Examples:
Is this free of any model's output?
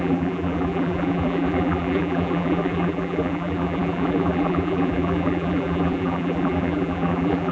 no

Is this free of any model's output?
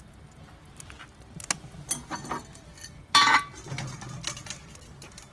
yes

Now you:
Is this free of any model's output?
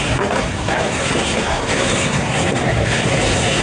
no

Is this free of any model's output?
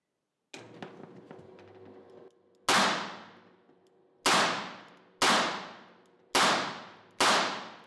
yes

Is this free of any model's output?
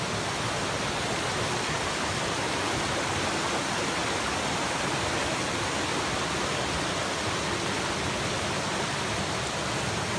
yes